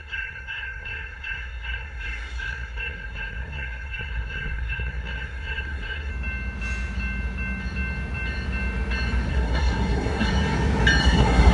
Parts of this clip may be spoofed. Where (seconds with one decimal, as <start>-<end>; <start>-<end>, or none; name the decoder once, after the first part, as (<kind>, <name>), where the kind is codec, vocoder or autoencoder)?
0.0-6.1 (codec, SNAC); 9.3-10.3; 11.0-11.5